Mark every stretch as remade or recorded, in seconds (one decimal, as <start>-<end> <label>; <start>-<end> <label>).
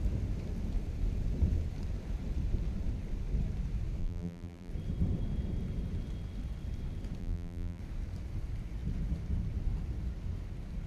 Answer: 0.0-4.0 recorded; 4.0-4.7 remade; 4.7-7.2 recorded; 7.2-7.8 remade; 7.8-10.9 recorded